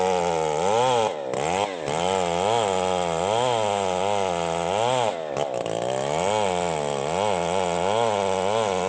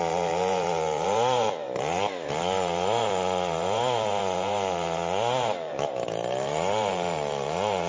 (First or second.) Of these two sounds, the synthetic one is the second